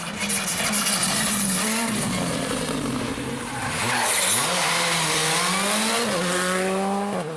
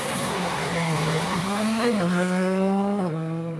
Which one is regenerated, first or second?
second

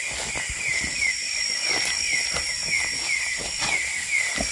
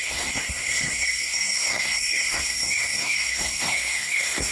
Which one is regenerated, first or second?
second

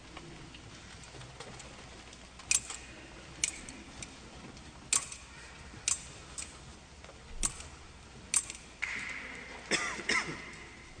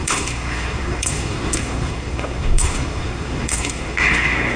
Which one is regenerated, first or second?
second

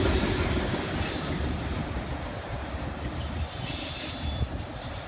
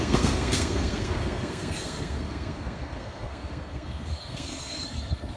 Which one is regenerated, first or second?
second